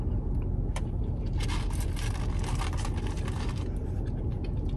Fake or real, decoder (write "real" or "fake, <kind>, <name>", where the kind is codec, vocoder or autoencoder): real